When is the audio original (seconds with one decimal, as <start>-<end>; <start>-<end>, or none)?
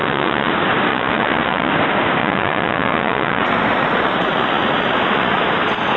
0.5-0.9; 1.7-2.2; 5.4-6.0